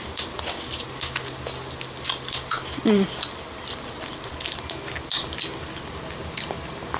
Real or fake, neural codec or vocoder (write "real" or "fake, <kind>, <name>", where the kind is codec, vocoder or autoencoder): real